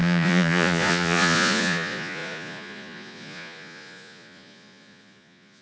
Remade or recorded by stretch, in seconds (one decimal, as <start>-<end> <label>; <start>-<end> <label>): 0.0-5.6 remade